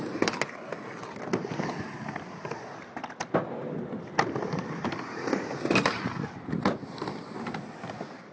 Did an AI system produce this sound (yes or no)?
no